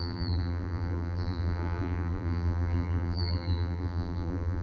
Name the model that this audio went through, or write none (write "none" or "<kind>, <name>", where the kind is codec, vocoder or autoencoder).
vocoder, BigVGAN v2